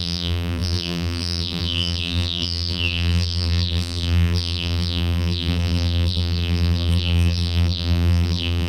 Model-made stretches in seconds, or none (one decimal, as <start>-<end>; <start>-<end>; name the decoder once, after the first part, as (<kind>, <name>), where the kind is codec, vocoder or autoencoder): 0.0-8.7 (vocoder, BigVGAN v2)